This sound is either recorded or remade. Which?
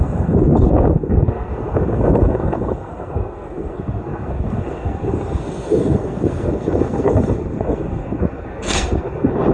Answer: remade